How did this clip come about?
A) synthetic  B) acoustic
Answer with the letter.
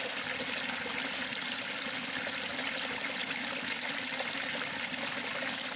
B